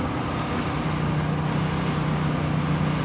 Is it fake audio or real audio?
real